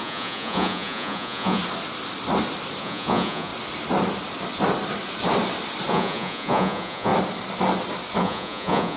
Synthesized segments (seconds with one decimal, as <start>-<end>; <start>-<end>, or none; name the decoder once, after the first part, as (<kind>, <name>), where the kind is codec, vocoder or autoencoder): 0.0-1.6 (vocoder, Vocos); 2.8-3.5; 5.9-7.1; 8.2-9.0